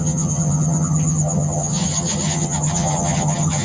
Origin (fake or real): fake